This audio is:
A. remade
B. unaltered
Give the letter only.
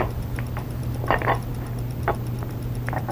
B